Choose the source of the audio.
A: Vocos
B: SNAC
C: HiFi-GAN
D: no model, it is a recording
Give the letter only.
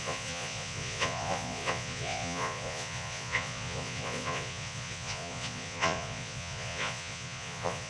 A